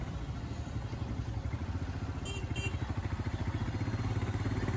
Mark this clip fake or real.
real